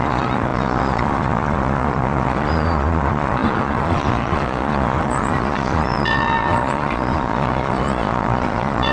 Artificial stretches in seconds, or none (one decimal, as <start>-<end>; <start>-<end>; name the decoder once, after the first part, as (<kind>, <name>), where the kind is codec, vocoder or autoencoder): 0.0-8.9 (vocoder, Vocos)